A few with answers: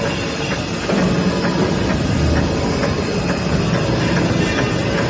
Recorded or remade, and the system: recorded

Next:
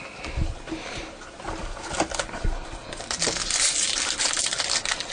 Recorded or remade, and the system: recorded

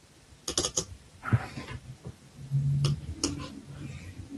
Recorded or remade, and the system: recorded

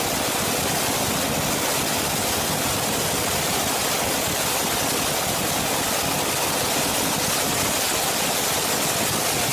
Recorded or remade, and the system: recorded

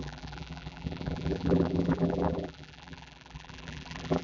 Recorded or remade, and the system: remade, vocoder, BigVGAN v2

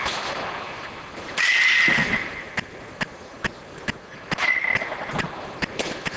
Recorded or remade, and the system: recorded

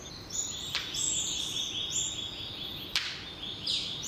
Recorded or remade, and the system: recorded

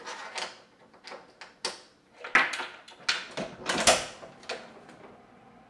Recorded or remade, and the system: recorded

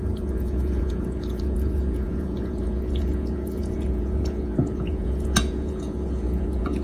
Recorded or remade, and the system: remade, vocoder, Vocos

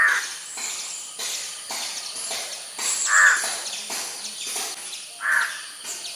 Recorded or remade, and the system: recorded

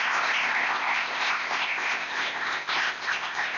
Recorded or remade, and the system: remade, codec, ZipCodec